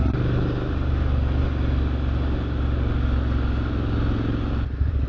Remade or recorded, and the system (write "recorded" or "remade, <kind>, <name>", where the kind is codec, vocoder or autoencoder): recorded